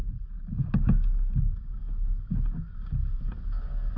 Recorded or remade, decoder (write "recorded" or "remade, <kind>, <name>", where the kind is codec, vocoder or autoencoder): recorded